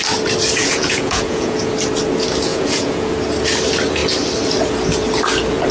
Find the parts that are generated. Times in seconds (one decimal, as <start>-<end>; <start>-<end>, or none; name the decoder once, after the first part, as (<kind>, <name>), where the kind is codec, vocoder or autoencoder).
0.6-1.7 (vocoder, Vocos); 2.5-3.1